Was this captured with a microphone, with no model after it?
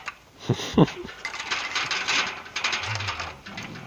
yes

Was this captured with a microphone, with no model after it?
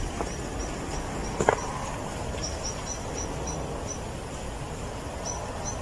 yes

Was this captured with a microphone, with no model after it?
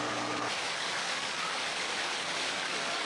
no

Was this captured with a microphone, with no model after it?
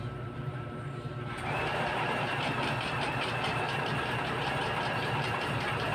no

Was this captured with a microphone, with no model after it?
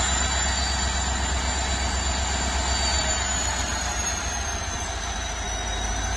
yes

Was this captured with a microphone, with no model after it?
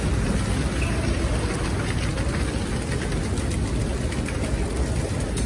yes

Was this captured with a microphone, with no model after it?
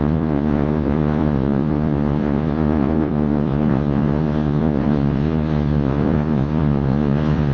no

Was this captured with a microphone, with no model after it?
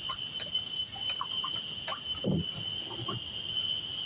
yes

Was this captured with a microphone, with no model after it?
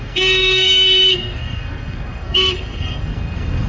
no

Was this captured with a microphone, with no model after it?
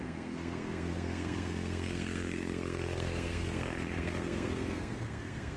no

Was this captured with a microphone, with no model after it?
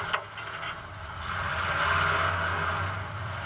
yes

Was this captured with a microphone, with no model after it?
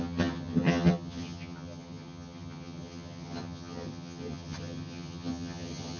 no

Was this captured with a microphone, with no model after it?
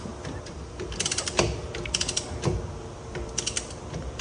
no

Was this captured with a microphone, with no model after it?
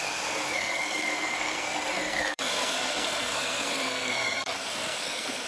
no